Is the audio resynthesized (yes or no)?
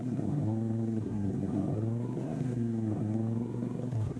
yes